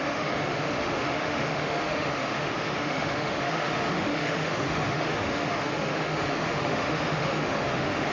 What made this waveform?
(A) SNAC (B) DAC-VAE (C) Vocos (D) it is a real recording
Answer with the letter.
B